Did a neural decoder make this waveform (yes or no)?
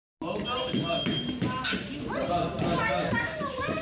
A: no